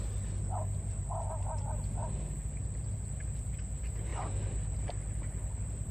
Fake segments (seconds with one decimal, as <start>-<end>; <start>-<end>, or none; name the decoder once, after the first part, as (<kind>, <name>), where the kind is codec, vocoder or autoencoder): none